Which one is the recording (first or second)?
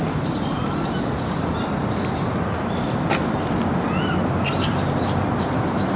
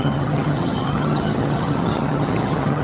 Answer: first